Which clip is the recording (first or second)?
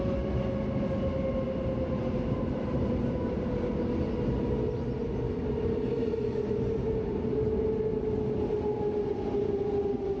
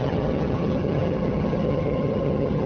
first